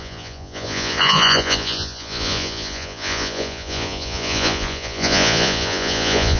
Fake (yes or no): yes